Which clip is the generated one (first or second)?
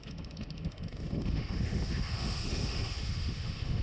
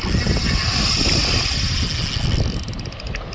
first